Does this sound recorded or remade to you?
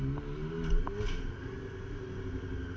recorded